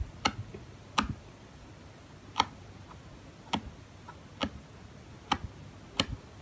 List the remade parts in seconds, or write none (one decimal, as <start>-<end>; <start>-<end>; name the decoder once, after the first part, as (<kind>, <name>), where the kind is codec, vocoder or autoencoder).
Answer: none